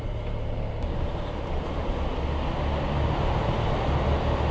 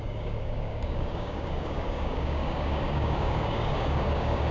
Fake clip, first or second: second